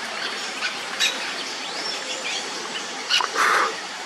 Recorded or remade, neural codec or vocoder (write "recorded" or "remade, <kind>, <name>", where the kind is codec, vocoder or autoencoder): remade, vocoder, BigVGAN v2